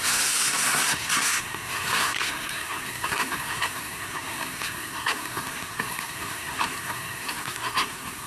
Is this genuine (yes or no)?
no